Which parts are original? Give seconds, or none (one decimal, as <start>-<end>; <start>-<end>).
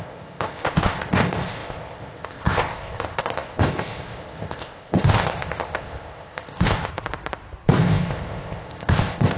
6.9-7.8